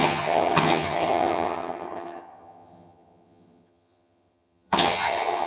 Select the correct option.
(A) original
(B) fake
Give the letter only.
B